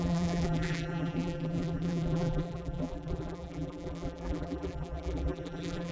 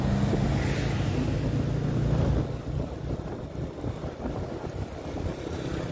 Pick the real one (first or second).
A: second